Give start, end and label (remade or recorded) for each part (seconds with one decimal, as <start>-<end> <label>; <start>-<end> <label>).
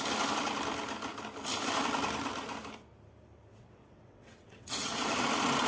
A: 0.0-3.5 recorded; 3.5-5.1 remade; 5.1-5.7 recorded